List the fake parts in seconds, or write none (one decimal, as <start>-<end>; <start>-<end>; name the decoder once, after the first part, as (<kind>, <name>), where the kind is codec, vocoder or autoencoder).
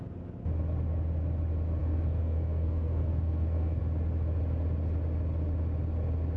1.8-3.8 (codec, SNAC)